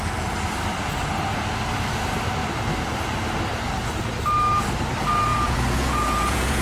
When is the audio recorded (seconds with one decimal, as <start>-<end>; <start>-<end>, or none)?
0.0-5.3